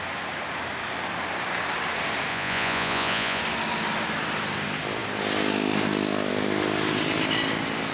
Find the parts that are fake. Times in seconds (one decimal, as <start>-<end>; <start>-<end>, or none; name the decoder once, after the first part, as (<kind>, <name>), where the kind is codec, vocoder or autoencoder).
2.3-3.4 (vocoder, Vocos)